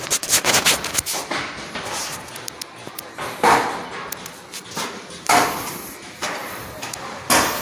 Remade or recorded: recorded